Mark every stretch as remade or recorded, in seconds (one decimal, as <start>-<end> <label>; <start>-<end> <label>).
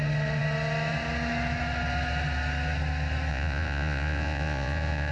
0.0-3.3 recorded; 3.3-5.1 remade